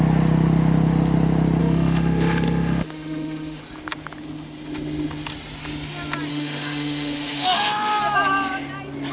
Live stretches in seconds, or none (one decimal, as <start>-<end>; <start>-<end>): 0.0-1.6; 3.6-6.3; 8.0-9.1